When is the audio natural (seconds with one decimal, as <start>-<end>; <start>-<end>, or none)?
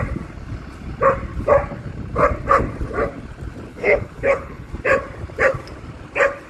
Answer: 0.0-3.7; 4.7-6.5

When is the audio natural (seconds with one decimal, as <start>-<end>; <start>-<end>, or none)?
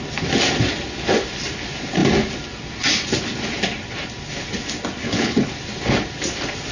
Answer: 0.0-5.0; 5.5-6.7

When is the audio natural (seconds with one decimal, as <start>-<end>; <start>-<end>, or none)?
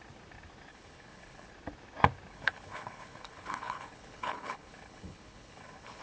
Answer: 0.0-0.7; 1.5-2.3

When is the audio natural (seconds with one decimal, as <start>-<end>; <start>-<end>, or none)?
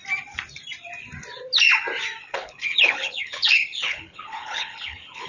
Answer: 0.0-2.2